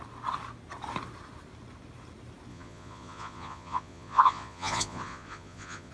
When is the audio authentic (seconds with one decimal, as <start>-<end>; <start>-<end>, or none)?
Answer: 0.0-2.5